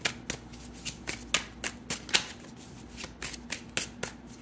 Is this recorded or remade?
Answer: recorded